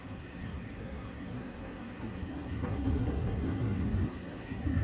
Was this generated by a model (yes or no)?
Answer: yes